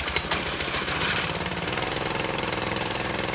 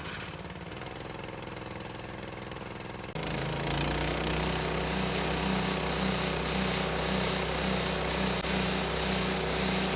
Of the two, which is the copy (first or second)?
first